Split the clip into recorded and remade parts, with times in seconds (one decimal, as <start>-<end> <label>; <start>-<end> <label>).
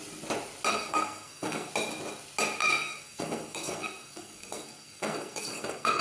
0.0-0.7 recorded; 0.7-1.7 remade; 1.7-2.6 recorded; 2.6-6.0 remade